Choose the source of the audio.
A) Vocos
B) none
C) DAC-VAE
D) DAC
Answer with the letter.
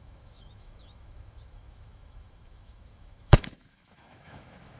C